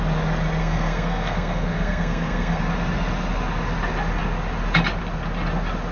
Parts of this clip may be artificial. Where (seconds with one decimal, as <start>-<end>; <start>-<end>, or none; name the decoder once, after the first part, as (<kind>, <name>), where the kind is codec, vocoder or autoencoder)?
0.6-2.6 (codec, SNAC)